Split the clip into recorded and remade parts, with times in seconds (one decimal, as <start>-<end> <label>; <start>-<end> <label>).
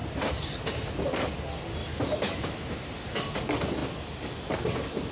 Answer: 0.0-1.8 recorded; 1.8-2.9 remade; 2.9-5.1 recorded